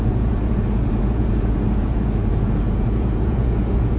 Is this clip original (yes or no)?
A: no